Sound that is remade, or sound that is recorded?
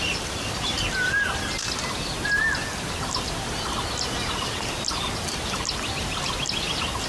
recorded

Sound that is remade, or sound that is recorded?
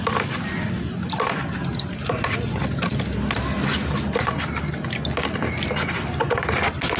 recorded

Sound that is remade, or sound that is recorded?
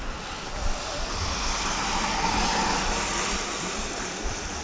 recorded